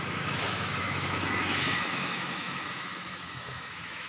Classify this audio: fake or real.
fake